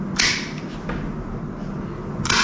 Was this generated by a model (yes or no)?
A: no